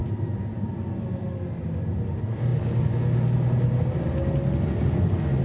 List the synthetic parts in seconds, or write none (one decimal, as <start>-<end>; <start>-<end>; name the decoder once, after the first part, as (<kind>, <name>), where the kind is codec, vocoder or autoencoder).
0.0-0.7 (vocoder, BigVGAN v2)